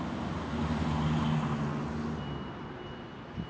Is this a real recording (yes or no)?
yes